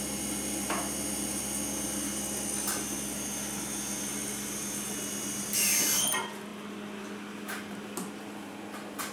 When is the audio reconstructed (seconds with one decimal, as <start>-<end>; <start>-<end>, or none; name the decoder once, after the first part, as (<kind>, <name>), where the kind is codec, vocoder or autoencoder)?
none